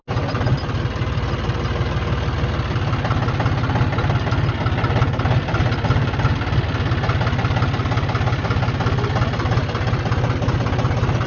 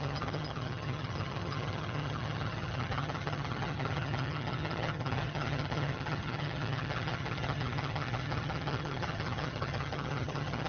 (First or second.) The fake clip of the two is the second